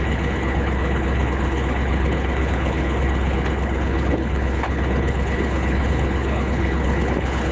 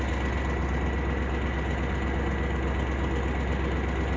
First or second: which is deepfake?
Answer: first